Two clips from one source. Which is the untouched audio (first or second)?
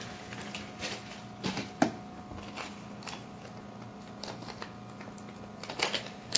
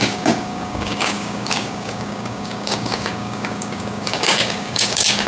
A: first